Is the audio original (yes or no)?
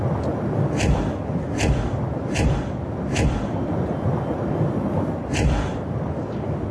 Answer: yes